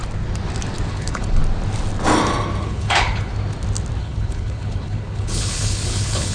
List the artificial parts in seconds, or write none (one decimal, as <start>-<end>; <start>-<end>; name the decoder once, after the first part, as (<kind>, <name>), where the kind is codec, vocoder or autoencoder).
0.9-1.4 (codec, HILCodec); 2.6-3.3; 4.0-6.3